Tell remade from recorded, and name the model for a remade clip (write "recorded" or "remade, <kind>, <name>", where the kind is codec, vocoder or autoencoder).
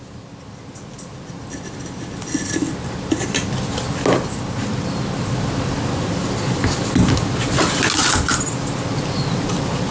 recorded